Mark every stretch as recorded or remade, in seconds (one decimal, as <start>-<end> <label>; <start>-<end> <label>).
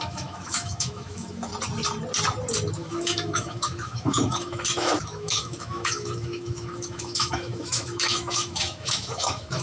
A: 0.0-1.5 remade; 1.5-2.7 recorded; 2.7-9.6 remade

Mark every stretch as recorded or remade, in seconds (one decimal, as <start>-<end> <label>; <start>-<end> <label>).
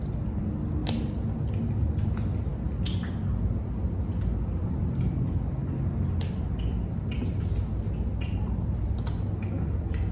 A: 0.0-10.1 recorded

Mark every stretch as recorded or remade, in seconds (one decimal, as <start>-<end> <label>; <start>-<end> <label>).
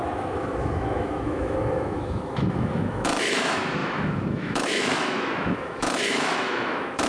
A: 0.0-7.1 remade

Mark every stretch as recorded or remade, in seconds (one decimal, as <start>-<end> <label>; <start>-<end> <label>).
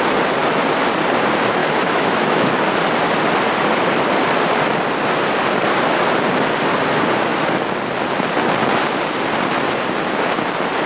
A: 0.0-1.6 recorded; 1.6-2.5 remade; 2.5-10.9 recorded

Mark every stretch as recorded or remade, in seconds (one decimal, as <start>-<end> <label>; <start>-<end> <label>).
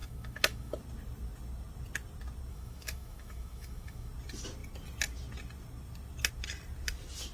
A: 0.0-0.8 remade; 0.8-2.5 recorded; 2.5-4.1 remade; 4.1-7.3 recorded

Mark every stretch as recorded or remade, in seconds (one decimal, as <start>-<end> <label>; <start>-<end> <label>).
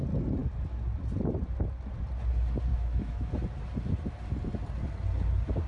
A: 0.0-2.7 recorded; 2.7-3.3 remade; 3.3-5.7 recorded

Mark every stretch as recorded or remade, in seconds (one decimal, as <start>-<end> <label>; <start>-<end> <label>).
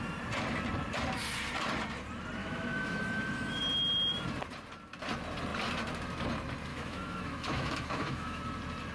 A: 0.0-2.4 recorded; 2.4-3.6 remade; 3.6-6.7 recorded; 6.7-8.4 remade; 8.4-8.9 recorded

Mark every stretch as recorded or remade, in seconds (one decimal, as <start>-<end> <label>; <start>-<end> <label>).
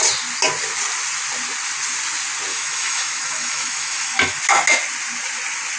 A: 0.0-2.5 recorded; 2.5-4.4 remade; 4.4-5.8 recorded